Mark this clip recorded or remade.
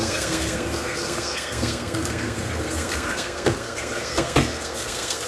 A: remade